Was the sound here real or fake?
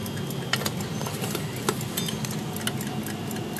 real